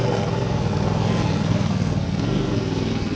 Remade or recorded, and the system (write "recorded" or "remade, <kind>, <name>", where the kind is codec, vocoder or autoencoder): remade, codec, SNAC